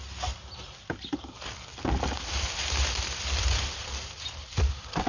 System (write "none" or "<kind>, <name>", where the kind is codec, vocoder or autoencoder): none